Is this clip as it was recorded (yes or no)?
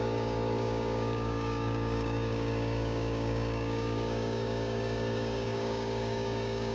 no